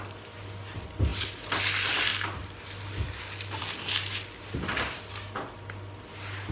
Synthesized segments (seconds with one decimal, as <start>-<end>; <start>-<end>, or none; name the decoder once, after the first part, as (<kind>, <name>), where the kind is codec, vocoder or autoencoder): none